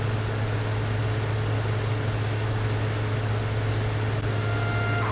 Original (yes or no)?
yes